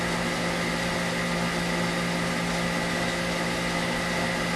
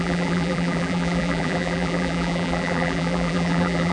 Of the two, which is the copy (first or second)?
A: second